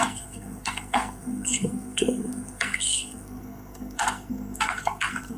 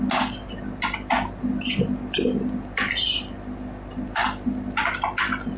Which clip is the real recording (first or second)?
second